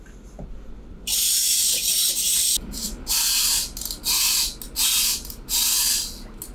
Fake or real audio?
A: real